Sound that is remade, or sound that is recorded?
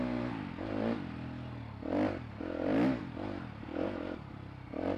recorded